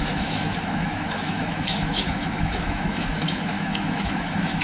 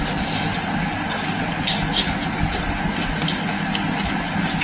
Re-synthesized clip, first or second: first